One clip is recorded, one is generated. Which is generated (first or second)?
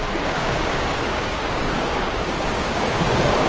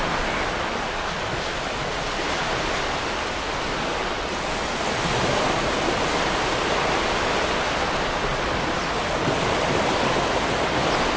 first